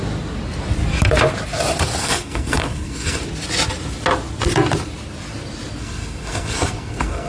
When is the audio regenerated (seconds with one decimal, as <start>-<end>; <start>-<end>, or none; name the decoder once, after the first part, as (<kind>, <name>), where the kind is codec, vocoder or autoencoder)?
2.0-3.2 (codec, SNAC); 5.8-7.3